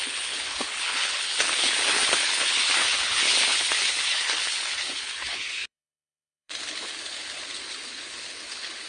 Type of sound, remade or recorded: remade